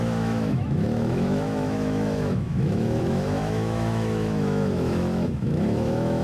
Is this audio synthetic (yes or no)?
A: yes